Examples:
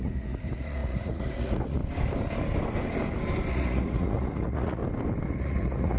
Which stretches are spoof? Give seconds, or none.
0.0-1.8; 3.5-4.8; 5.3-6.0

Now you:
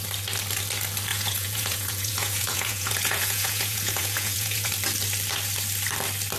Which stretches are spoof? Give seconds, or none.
1.1-4.7

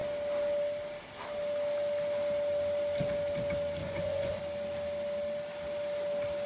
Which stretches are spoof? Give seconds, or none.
3.8-4.4

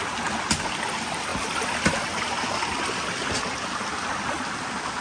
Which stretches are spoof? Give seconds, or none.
none

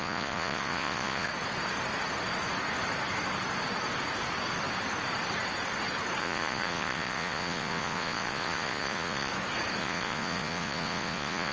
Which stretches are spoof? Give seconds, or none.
0.0-1.3; 6.2-9.3; 9.8-11.5

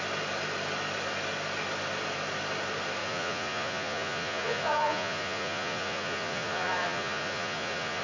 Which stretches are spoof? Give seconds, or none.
3.0-8.0